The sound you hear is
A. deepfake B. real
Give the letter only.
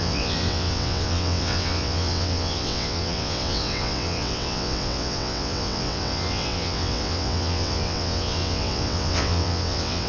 A